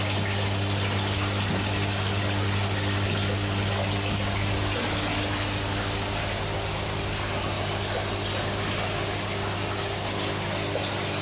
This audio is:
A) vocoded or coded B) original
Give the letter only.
B